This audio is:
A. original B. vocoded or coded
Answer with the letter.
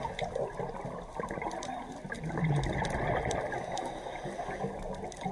A